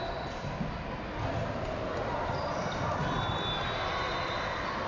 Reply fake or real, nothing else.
real